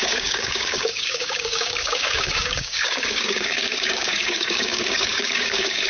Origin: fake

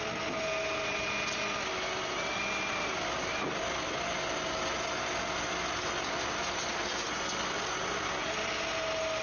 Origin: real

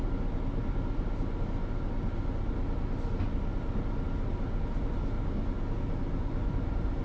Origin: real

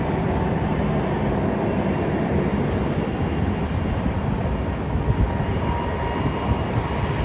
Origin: real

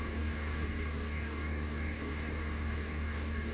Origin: fake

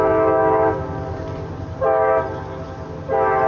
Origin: real